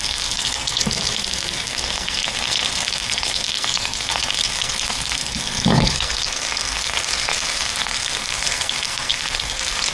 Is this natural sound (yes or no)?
no